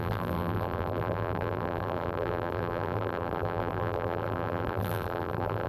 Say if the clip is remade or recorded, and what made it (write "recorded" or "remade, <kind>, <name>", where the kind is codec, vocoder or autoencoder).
remade, vocoder, BigVGAN v2